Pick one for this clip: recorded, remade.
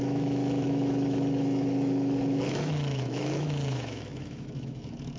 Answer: remade